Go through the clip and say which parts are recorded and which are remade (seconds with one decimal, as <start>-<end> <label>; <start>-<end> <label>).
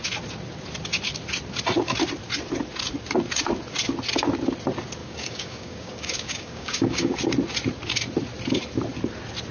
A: 0.0-5.0 recorded; 5.0-7.2 remade; 7.2-9.5 recorded